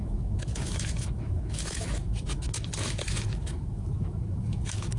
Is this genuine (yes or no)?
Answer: no